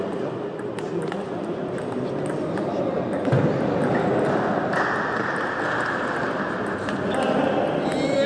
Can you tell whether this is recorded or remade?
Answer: recorded